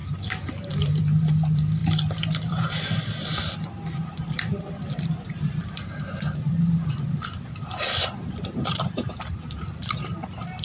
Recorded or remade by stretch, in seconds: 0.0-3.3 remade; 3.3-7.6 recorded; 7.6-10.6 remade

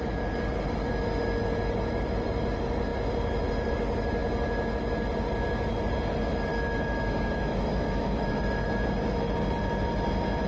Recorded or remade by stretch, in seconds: 0.0-6.5 recorded; 6.5-8.3 remade; 8.3-10.5 recorded

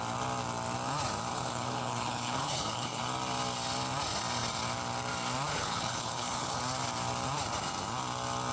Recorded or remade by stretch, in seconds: 0.0-1.3 recorded; 1.3-3.0 remade; 3.0-5.5 recorded; 5.5-6.6 remade; 6.6-8.5 recorded

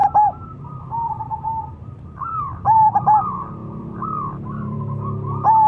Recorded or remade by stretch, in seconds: 0.0-3.2 remade; 3.2-3.6 recorded; 3.6-4.8 remade; 4.8-5.7 recorded

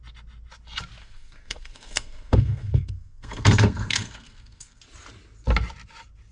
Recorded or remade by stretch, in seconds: 0.0-1.0 recorded; 1.0-4.8 remade; 4.8-6.3 recorded